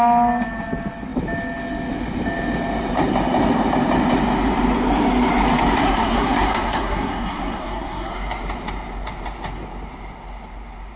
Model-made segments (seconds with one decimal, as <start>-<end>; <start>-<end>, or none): 5.8-8.1

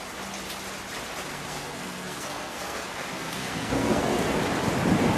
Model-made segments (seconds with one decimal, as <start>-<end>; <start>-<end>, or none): 1.3-4.4

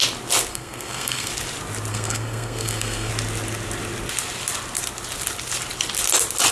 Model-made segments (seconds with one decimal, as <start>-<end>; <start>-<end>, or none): 0.5-1.3; 1.9-3.1

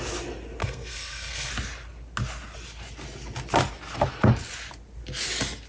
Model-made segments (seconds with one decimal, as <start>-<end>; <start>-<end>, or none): 0.6-1.5

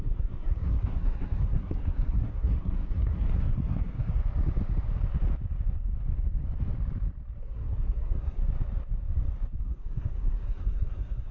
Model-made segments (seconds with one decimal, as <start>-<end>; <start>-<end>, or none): 0.0-4.2; 7.4-8.4; 9.6-11.3